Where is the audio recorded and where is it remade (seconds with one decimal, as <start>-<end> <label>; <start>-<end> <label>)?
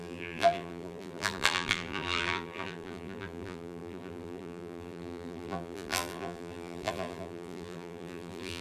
0.0-8.6 remade